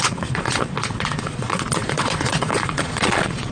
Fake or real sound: fake